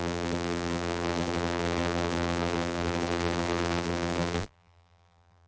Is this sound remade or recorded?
remade